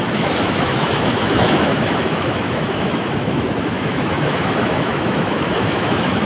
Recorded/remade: remade